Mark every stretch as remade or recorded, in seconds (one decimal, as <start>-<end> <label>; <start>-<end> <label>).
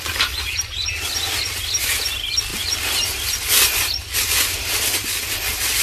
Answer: 0.0-5.8 recorded